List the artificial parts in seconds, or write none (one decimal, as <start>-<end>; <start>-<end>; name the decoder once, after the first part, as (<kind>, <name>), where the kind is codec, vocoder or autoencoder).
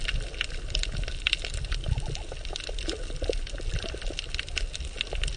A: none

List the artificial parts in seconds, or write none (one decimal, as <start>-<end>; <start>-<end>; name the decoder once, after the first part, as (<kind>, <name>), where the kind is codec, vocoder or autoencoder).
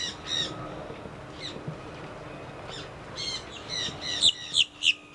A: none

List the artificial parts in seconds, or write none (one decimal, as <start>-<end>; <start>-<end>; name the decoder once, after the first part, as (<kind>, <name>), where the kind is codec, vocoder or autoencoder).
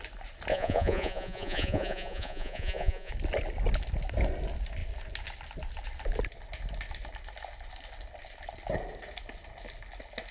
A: 0.5-3.1 (vocoder, Vocos)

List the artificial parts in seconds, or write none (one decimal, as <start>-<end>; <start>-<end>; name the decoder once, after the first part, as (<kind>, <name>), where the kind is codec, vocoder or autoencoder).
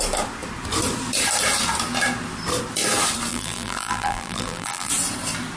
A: 3.3-4.9 (vocoder, BigVGAN v2)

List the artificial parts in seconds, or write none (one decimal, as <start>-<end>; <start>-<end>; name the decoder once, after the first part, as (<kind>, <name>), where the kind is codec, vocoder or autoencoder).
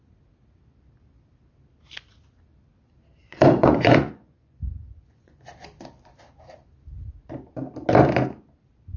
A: 3.2-5.4 (vocoder, Vocos)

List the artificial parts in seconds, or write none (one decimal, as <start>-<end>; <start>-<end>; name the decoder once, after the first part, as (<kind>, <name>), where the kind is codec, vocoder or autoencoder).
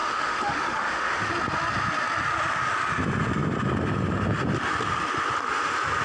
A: 0.0-1.3 (autoencoder, DAC-VAE)